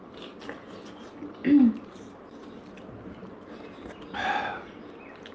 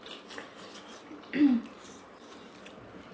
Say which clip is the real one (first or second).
first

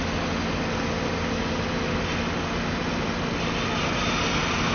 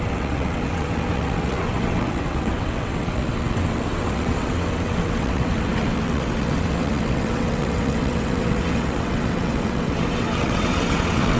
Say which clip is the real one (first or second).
first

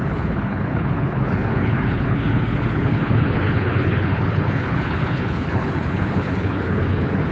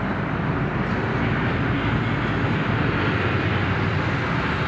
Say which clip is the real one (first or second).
second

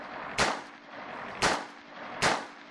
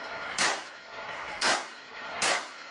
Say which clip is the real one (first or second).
first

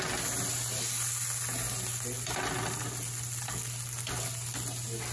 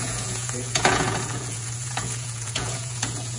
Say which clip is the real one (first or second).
first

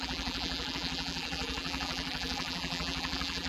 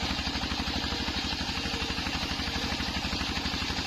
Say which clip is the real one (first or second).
second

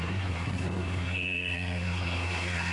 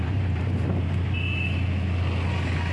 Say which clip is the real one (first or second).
second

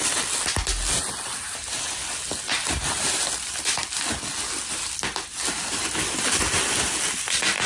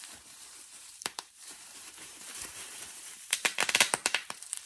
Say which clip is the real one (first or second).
first